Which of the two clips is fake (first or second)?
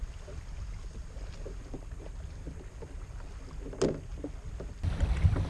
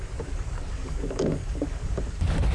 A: second